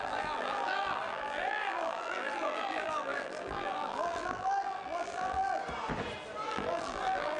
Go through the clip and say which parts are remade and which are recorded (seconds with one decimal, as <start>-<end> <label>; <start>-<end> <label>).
0.0-5.6 remade; 5.6-6.5 recorded; 6.5-7.4 remade